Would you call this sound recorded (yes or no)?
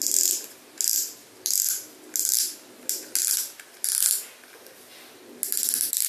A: yes